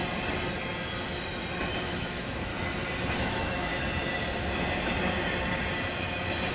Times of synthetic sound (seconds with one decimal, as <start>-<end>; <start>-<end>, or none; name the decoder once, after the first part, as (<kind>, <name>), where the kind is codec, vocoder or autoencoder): 1.8-2.5 (autoencoder, DAC-VAE); 3.2-3.7